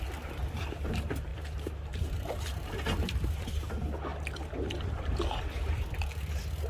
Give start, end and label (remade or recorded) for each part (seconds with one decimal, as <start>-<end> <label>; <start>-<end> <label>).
0.0-1.3 recorded; 1.3-3.5 remade; 3.5-6.7 recorded